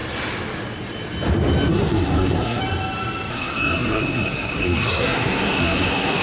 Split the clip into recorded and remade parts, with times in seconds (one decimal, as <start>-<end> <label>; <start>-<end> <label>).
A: 0.0-1.7 recorded; 1.7-2.6 remade; 2.6-3.3 recorded; 3.3-6.2 remade